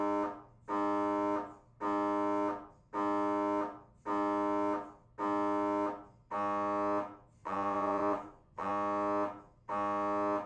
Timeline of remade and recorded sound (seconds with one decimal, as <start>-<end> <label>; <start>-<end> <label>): 0.0-7.4 recorded; 7.4-8.7 remade; 8.7-10.5 recorded

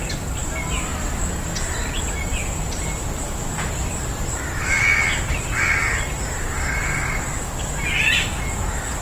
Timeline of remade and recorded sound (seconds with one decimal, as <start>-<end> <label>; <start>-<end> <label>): 0.0-9.0 recorded

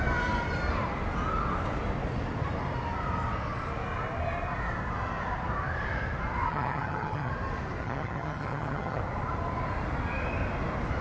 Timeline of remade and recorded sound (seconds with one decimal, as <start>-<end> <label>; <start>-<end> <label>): 0.0-6.5 recorded; 6.5-7.3 remade; 7.3-7.8 recorded; 7.8-9.0 remade; 9.0-11.0 recorded

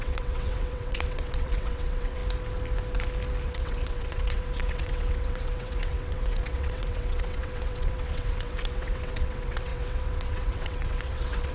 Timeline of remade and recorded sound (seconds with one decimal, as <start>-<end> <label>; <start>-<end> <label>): 0.0-2.2 remade; 2.2-3.4 recorded; 3.4-11.5 remade